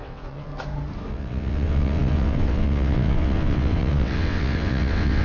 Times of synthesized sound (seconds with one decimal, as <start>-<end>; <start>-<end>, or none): 0.0-0.5; 1.1-5.2